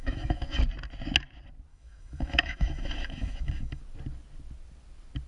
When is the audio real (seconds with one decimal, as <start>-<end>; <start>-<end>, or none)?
0.6-1.7; 3.8-5.3